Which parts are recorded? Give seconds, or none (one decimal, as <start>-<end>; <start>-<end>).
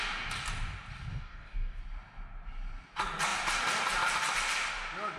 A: 0.0-1.1; 1.8-5.2